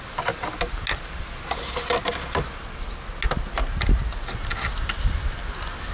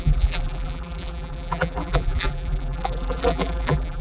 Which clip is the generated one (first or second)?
second